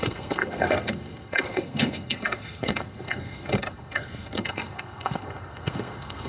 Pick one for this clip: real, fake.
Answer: fake